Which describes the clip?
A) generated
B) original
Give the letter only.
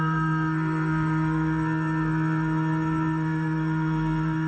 A